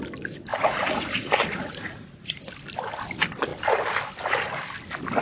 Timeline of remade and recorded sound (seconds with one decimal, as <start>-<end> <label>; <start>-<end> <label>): 0.0-0.5 recorded; 0.5-2.5 remade; 2.5-5.2 recorded